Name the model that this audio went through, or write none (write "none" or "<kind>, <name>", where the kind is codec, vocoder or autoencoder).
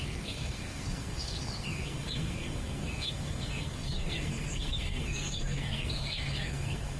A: codec, SNAC